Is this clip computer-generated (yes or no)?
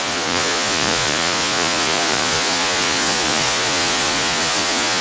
yes